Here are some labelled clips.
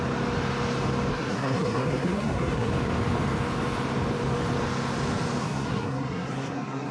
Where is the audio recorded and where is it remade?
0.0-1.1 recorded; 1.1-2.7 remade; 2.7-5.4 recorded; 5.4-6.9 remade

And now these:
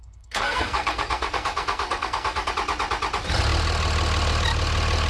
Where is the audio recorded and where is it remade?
0.0-2.5 remade; 2.5-5.1 recorded

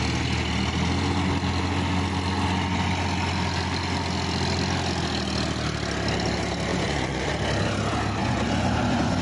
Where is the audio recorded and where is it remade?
0.0-6.7 recorded; 6.7-7.3 remade; 7.3-8.2 recorded; 8.2-9.2 remade

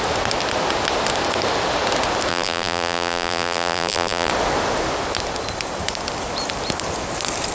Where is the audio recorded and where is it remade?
0.0-2.3 recorded; 2.3-4.3 remade; 4.3-7.5 recorded

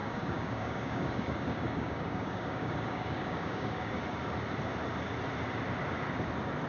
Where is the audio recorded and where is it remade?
0.0-4.0 remade; 4.0-6.7 recorded

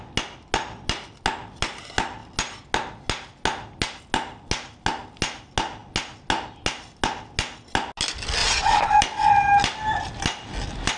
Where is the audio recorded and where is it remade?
0.0-8.4 recorded; 8.4-9.0 remade; 9.0-11.0 recorded

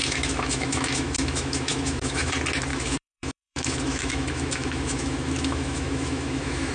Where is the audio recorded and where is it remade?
0.0-2.3 remade; 2.3-2.7 recorded; 2.7-6.7 remade

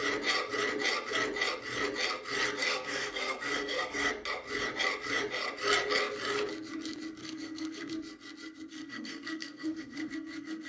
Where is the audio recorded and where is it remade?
0.0-2.6 recorded; 2.6-4.1 remade; 4.1-7.2 recorded; 7.2-7.9 remade; 7.9-8.7 recorded; 8.7-10.7 remade